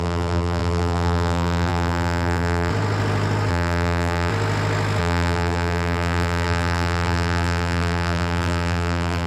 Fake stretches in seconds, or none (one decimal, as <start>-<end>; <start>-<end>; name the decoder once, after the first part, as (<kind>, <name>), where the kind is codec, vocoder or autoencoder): 0.0-2.7 (vocoder, BigVGAN v2); 3.5-4.3; 5.0-9.3